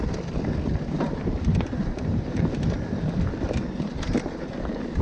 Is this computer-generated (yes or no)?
no